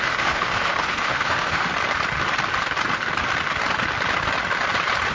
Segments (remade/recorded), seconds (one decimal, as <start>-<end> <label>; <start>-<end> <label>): 0.0-1.7 remade; 1.7-5.1 recorded